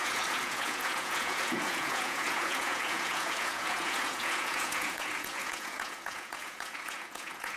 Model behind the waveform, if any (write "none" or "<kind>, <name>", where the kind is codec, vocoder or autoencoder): vocoder, Vocos